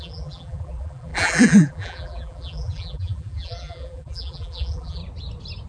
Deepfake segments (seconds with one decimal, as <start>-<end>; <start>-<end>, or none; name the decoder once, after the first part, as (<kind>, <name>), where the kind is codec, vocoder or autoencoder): 0.0-5.0 (vocoder, BigVGAN v2)